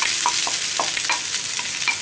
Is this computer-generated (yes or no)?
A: no